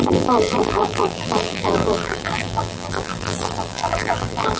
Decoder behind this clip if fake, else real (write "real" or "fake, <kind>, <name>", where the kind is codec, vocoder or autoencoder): fake, vocoder, BigVGAN v2